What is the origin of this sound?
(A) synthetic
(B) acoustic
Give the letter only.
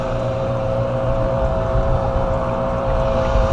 A